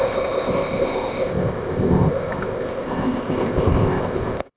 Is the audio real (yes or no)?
no